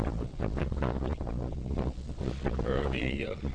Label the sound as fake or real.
fake